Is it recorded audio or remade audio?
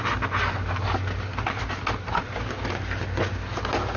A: recorded